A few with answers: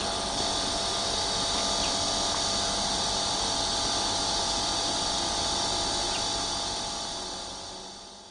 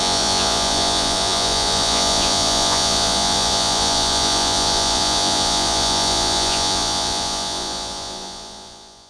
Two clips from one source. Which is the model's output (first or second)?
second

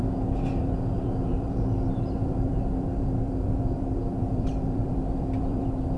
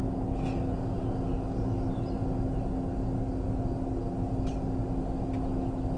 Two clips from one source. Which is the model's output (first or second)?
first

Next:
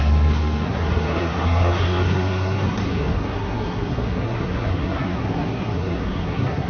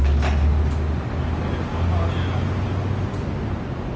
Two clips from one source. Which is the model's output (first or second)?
first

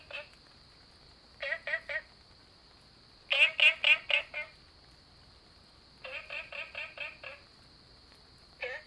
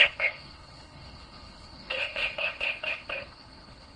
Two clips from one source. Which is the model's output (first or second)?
second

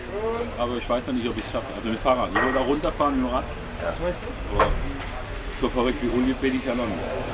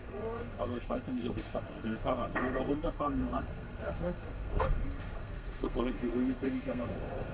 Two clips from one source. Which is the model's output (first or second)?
second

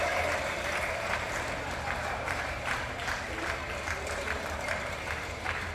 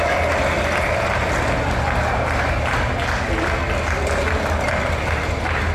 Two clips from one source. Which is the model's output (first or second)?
first